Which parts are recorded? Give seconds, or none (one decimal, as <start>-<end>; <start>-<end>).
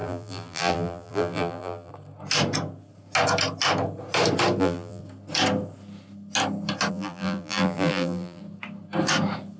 1.9-4.6; 5.0-6.9; 8.4-9.6